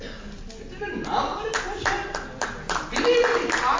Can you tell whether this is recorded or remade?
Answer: recorded